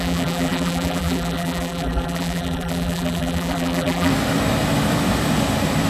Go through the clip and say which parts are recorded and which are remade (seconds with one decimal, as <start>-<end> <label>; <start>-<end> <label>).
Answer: 0.0-4.1 remade; 4.1-5.9 recorded